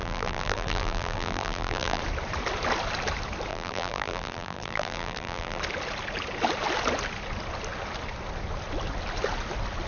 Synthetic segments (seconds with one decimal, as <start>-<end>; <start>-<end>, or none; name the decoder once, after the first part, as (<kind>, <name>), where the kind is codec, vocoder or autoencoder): 0.0-2.0 (vocoder, BigVGAN v2); 3.5-5.6